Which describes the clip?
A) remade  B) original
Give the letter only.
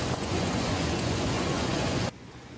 A